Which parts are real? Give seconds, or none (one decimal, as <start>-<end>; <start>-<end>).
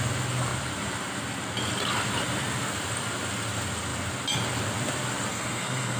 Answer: 0.0-5.3